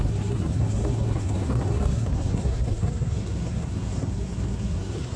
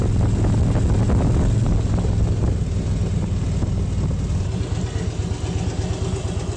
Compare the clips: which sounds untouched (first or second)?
second